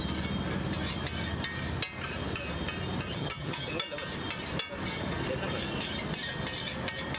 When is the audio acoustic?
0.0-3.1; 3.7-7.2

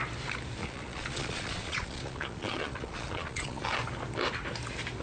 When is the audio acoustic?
0.0-0.6; 3.6-5.0